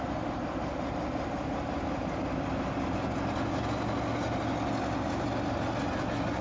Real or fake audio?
real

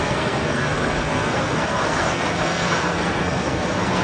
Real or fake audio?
fake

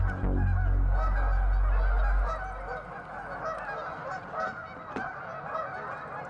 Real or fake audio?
real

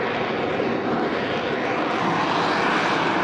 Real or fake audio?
real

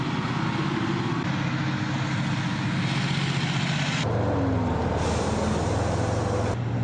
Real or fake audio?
real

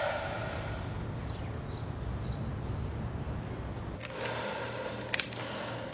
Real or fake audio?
real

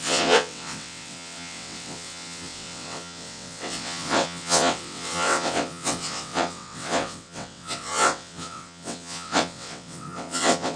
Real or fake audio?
fake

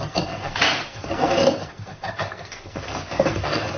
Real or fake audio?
fake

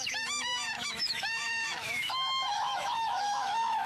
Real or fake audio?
fake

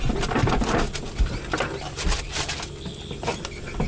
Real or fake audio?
real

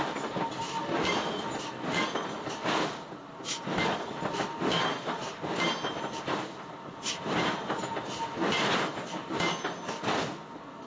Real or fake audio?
real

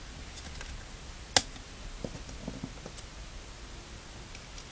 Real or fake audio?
real